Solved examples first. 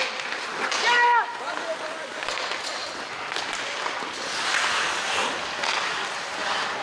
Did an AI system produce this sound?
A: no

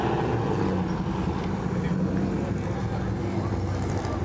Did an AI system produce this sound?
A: no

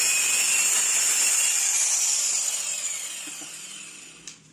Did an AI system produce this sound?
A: yes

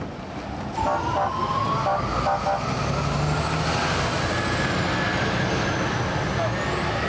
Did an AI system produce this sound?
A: no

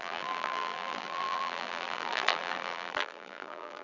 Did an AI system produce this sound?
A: yes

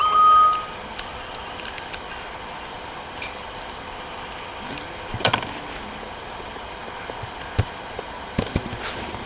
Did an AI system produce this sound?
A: no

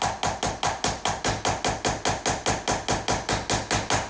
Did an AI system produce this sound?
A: no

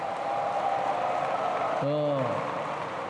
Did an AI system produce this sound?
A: no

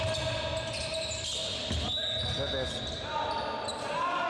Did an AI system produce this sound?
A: no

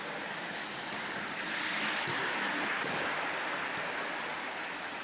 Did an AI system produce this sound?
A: no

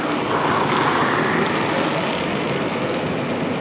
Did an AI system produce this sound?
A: no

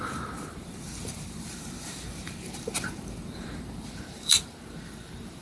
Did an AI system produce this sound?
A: yes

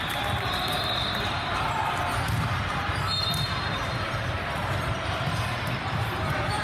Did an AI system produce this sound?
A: yes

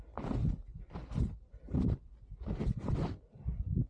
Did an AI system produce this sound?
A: no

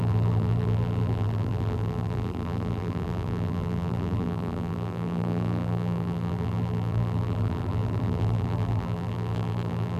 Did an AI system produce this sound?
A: yes